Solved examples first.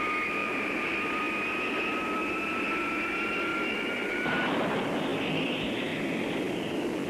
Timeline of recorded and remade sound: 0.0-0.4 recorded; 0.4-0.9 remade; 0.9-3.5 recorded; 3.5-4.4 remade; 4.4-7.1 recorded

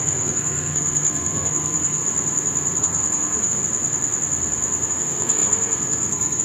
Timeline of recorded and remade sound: 0.0-2.0 remade; 2.0-2.8 recorded; 2.8-3.6 remade; 3.6-4.9 recorded; 4.9-6.4 remade

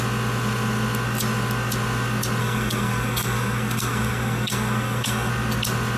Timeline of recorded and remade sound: 0.0-2.4 recorded; 2.4-5.3 remade; 5.3-6.0 recorded

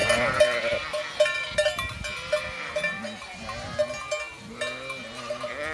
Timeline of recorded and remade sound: 0.0-5.7 recorded